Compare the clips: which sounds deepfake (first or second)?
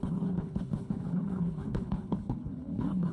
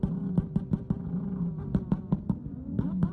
first